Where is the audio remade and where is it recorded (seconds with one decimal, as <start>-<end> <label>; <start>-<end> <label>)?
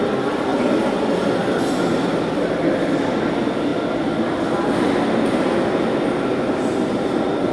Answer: 0.0-7.5 recorded